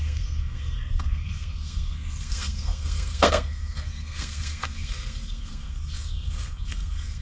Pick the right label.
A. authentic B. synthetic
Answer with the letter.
B